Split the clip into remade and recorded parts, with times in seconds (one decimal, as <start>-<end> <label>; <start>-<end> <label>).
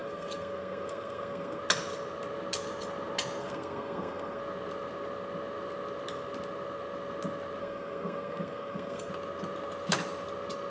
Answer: 0.0-1.6 remade; 1.6-3.4 recorded; 3.4-4.4 remade; 4.4-7.6 recorded; 7.6-9.1 remade; 9.1-10.7 recorded